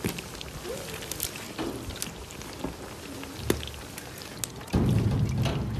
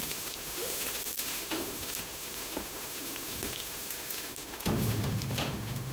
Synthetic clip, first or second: second